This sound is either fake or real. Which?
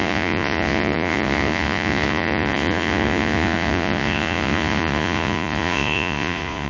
fake